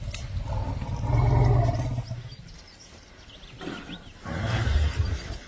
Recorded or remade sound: recorded